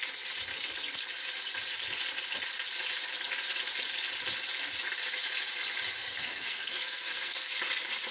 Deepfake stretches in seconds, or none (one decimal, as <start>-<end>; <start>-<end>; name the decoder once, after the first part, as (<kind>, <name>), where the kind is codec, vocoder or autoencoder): 6.0-7.5 (codec, SNAC)